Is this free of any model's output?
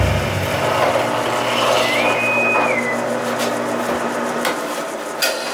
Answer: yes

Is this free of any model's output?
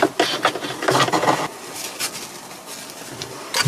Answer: yes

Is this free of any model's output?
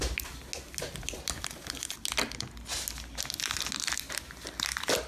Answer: yes